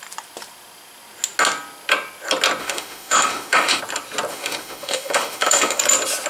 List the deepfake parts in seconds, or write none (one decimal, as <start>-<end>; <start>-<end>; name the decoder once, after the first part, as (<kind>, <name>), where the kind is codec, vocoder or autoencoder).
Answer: 2.6-3.8 (autoencoder, DAC-VAE); 4.3-5.8